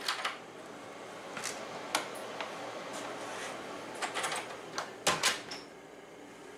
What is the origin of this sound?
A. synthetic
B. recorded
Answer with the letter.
B